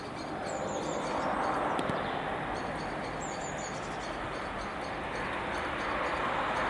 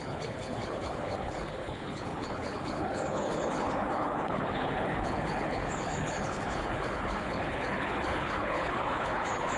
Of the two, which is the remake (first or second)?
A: second